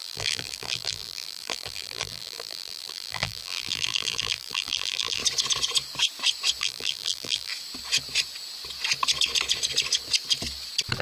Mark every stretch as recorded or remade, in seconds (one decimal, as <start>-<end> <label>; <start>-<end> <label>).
0.0-5.2 remade; 5.2-6.6 recorded; 6.6-7.5 remade; 7.5-11.0 recorded